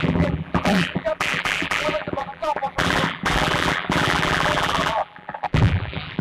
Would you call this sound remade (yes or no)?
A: yes